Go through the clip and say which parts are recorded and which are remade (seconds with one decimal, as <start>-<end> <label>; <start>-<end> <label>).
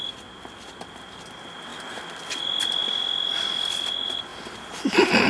0.0-4.3 recorded; 4.3-5.3 remade